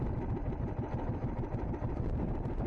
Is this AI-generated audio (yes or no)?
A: no